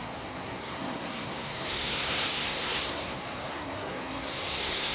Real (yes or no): no